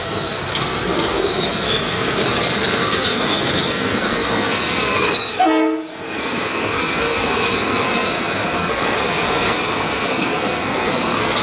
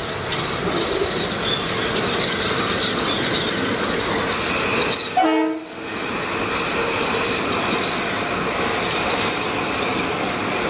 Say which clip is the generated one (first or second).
first